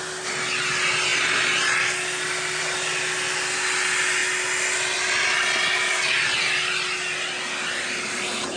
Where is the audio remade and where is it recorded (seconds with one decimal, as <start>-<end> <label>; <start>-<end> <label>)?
0.0-8.6 recorded